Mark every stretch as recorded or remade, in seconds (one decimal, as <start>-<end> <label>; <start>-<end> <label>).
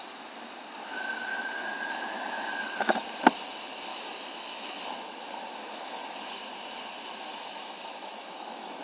0.0-1.3 recorded; 1.3-2.5 remade; 2.5-3.9 recorded; 3.9-4.8 remade; 4.8-5.6 recorded; 5.6-6.3 remade; 6.3-7.3 recorded; 7.3-8.8 remade